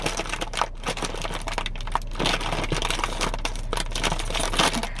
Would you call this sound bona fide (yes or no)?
yes